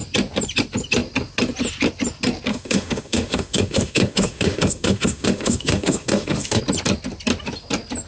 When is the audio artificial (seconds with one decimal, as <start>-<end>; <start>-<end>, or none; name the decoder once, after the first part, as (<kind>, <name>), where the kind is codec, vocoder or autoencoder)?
2.5-6.6 (autoencoder, DAC-VAE)